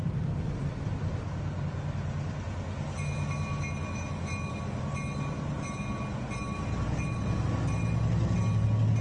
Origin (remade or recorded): recorded